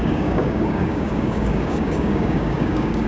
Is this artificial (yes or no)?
yes